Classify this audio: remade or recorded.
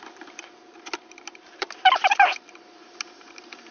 remade